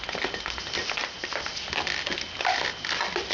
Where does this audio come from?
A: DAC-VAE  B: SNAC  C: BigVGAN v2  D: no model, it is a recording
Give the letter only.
D